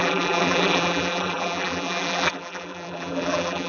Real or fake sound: fake